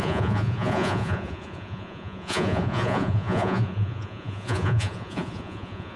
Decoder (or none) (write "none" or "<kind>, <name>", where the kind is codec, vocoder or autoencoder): vocoder, Vocos